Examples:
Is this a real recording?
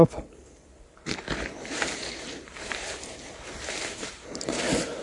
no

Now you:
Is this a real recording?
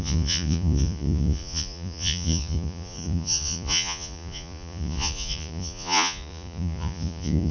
no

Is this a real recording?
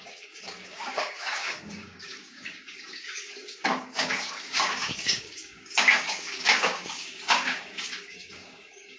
no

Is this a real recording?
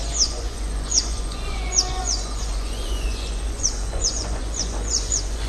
no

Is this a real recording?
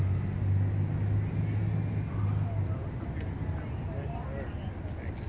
yes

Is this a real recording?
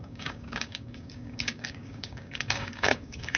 no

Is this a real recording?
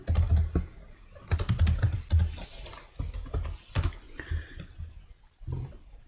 yes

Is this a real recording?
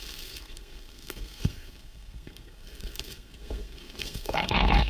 no